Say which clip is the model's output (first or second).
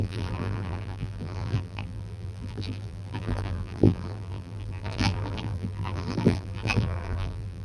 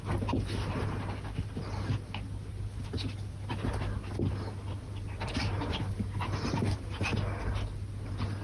first